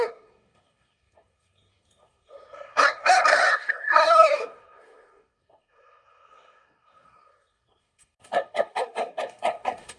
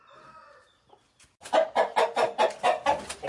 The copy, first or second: first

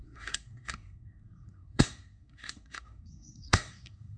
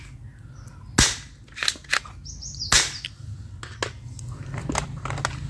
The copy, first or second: first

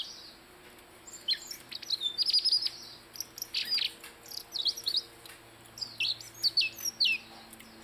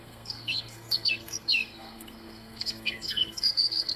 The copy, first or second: second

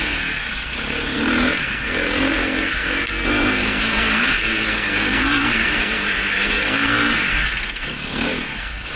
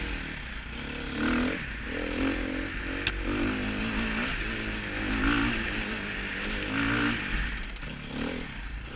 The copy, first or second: first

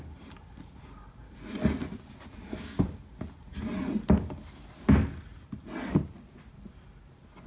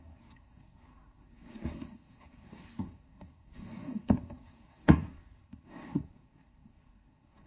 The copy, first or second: second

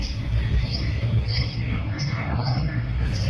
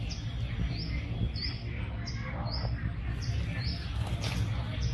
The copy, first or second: first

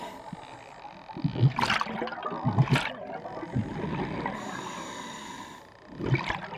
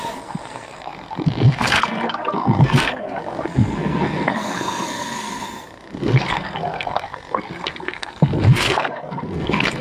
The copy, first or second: second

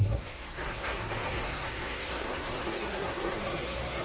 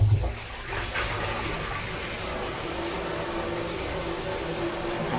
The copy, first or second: first